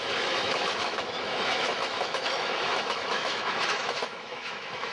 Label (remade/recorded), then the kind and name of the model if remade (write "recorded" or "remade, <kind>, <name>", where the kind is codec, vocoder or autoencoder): remade, autoencoder, DAC-VAE